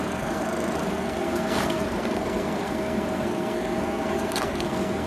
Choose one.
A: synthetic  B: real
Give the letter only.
A